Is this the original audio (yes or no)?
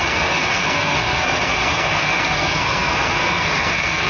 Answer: no